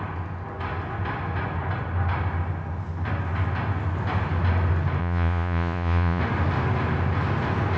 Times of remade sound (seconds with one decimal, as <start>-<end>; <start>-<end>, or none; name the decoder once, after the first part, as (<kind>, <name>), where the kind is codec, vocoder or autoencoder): 5.0-6.2 (vocoder, Vocos)